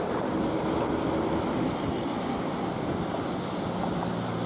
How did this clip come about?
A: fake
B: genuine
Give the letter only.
B